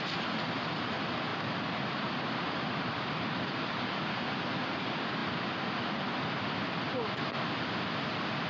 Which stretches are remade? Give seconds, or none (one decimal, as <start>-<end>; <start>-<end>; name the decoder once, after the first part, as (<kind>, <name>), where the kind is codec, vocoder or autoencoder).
none